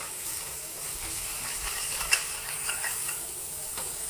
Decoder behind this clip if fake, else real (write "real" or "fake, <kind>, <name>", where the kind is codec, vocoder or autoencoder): fake, codec, DAC